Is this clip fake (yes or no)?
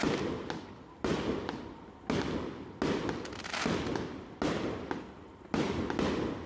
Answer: no